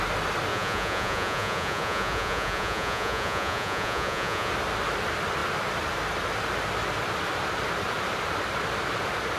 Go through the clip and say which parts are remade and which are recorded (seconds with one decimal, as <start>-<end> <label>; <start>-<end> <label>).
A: 0.0-0.5 recorded; 0.5-4.5 remade; 4.5-9.4 recorded